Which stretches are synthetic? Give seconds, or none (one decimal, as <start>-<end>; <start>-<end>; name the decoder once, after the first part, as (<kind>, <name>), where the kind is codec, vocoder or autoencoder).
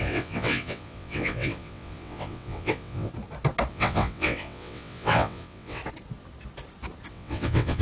0.0-3.1 (vocoder, WaveNeXt); 3.7-5.8; 7.1-7.8